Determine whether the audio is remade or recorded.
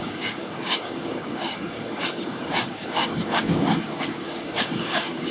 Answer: remade